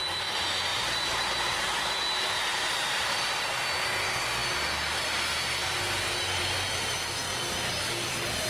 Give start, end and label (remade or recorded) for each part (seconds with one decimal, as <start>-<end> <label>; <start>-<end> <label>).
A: 0.0-0.7 recorded; 0.7-2.0 remade; 2.0-2.5 recorded; 2.5-3.6 remade; 3.6-8.5 recorded